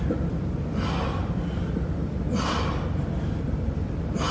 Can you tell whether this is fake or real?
real